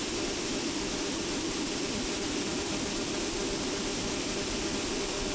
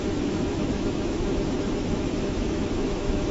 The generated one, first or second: second